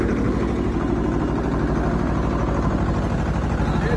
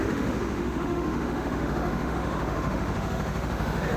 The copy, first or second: second